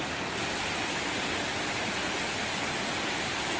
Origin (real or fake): real